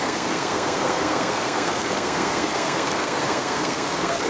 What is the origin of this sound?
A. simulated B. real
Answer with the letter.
A